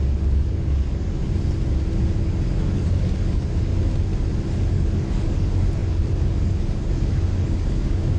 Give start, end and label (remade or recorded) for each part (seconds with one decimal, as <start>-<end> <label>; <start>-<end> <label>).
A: 0.0-1.2 remade; 1.2-2.2 recorded; 2.2-3.7 remade; 3.7-4.7 recorded; 4.7-8.2 remade